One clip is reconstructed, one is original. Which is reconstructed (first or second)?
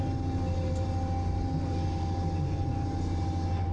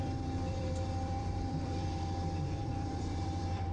second